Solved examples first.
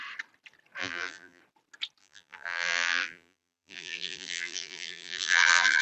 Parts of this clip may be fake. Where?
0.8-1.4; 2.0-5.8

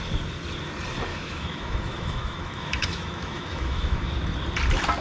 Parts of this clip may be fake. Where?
1.1-4.1

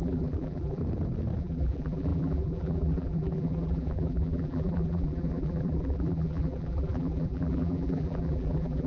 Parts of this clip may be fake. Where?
0.0-0.8; 1.4-8.9